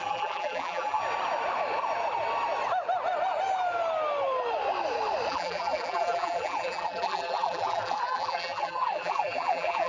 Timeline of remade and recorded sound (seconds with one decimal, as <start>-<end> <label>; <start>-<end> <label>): 0.0-1.0 remade; 1.0-5.3 recorded; 5.3-9.9 remade